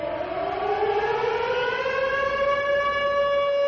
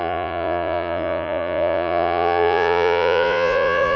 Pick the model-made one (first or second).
second